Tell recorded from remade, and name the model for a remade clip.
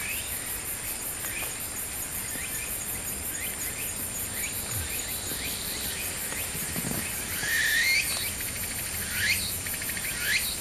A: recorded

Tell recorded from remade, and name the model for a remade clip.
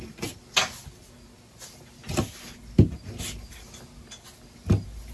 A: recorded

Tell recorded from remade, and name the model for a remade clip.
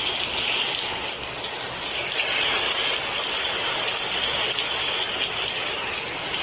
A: recorded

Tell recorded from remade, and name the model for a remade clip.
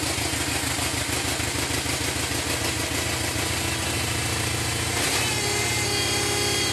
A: recorded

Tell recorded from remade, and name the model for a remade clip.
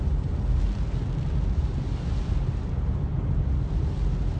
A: recorded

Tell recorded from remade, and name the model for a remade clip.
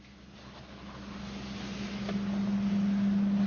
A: recorded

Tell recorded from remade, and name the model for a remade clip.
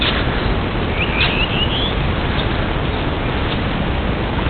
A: recorded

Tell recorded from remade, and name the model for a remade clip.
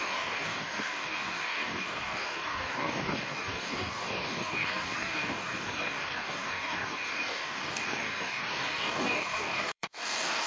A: remade, codec, DAC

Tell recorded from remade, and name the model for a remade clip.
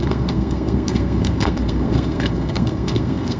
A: remade, codec, SNAC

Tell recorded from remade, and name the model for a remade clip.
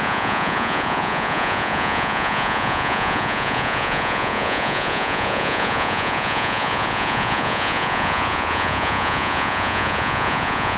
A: remade, vocoder, Vocos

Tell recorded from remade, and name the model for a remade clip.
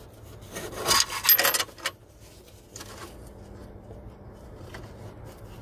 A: recorded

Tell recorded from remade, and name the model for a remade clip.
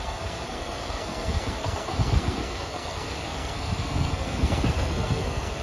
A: remade, codec, SNAC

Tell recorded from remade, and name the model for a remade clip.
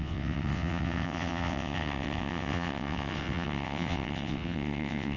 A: remade, vocoder, WaveNeXt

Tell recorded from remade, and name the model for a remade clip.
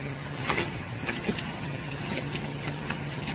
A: remade, vocoder, HiFi-GAN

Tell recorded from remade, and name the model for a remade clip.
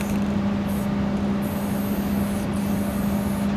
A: recorded